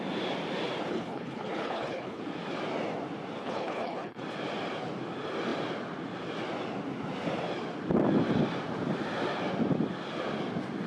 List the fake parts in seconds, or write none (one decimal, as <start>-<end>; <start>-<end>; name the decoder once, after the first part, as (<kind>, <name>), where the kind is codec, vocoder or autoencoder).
0.9-2.2 (codec, HILCodec); 3.4-4.2